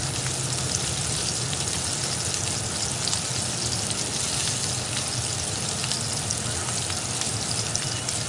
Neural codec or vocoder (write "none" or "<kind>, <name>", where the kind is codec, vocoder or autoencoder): none